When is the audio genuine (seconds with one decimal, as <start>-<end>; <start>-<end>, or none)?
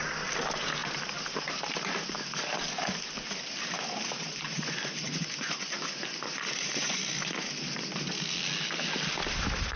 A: 0.0-4.2; 7.0-9.8